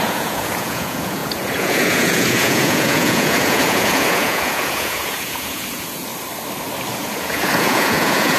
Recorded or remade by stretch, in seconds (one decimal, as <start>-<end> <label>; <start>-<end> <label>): 0.0-6.1 remade; 6.1-7.0 recorded; 7.0-8.4 remade